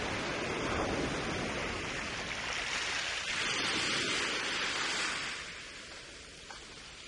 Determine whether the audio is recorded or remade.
recorded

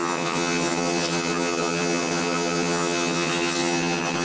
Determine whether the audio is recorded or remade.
remade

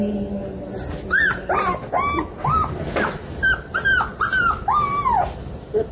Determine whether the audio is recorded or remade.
recorded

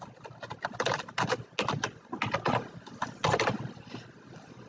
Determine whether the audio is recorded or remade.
recorded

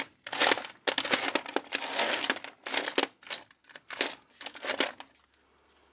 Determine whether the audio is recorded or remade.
recorded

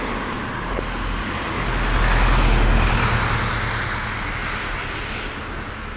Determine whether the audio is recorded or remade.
recorded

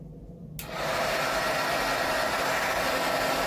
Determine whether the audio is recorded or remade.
recorded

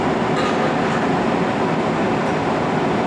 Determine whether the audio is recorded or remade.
recorded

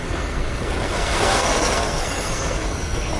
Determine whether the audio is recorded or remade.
remade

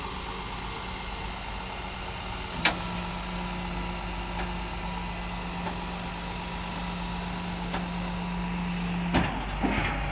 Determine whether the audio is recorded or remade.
recorded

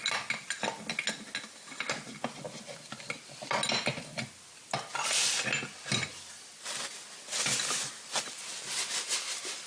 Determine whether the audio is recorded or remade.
recorded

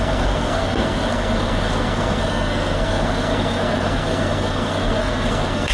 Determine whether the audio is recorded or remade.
remade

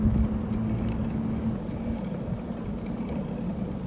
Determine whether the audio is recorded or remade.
recorded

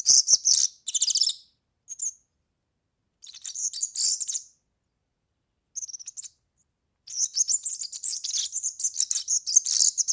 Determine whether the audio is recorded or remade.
recorded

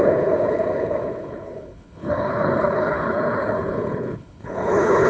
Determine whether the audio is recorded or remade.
remade